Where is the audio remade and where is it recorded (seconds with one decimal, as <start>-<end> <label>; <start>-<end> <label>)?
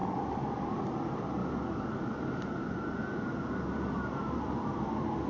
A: 0.0-1.4 recorded; 1.4-2.0 remade; 2.0-5.3 recorded